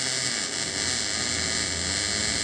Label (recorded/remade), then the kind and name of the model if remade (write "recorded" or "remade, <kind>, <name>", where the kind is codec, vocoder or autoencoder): recorded